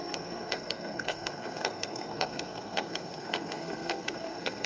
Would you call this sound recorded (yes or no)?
no